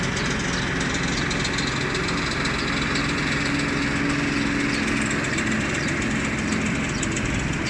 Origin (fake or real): real